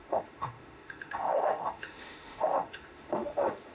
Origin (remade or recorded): remade